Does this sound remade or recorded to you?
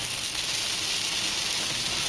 recorded